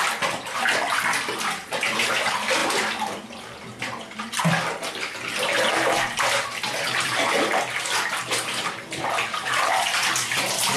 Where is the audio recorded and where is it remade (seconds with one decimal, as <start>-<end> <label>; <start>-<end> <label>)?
0.0-10.8 recorded